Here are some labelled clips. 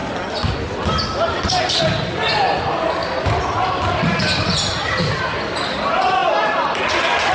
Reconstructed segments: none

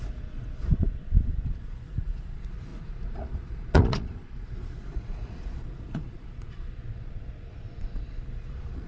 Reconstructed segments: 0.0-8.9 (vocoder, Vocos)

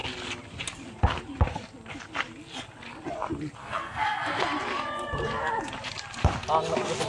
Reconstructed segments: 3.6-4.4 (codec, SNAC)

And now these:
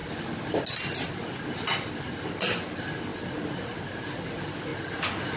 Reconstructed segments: 0.0-0.6 (vocoder, BigVGAN v2)

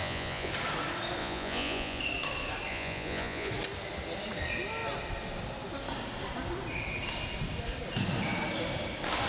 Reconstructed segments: 0.0-0.5 (vocoder, Vocos); 1.2-2.0; 2.7-3.5

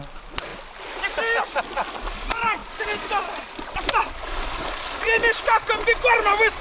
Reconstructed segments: none

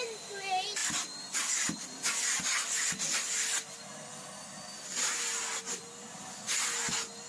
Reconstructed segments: none